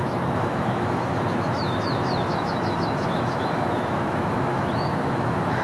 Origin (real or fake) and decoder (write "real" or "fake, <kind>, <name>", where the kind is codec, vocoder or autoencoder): fake, autoencoder, DAC-VAE